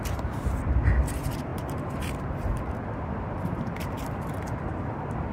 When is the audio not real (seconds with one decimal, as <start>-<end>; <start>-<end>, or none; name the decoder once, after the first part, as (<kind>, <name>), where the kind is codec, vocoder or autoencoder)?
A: 0.0-5.3 (vocoder, BigVGAN v2)